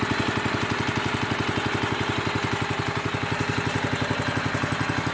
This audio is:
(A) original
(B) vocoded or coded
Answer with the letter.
A